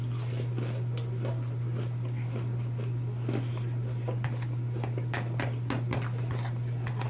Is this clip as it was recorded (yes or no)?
yes